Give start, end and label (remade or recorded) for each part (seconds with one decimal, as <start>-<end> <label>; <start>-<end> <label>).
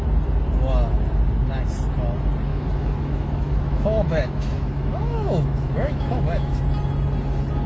0.0-2.5 recorded; 2.5-6.6 remade; 6.6-7.7 recorded